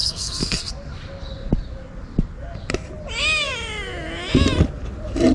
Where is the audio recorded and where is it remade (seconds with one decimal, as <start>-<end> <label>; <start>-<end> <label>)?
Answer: 0.0-0.7 remade; 0.7-5.3 recorded